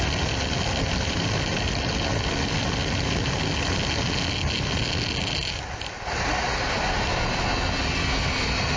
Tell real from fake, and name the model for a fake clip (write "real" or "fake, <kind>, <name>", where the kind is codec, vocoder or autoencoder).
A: real